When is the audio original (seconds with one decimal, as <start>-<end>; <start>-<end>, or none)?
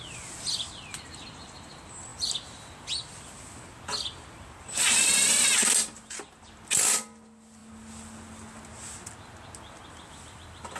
0.0-10.8